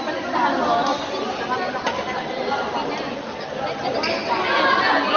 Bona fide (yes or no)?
yes